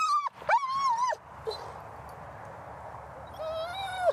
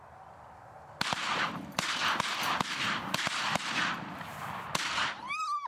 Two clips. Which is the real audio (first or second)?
first